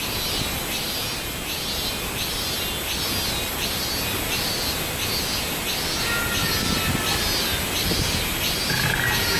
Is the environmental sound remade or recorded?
recorded